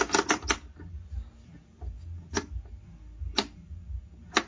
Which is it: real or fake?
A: real